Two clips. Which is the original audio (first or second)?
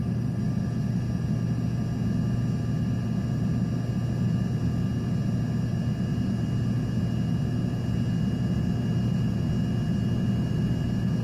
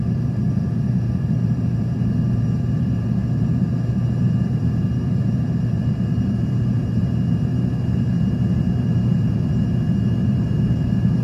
first